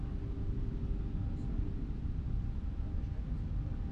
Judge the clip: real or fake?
real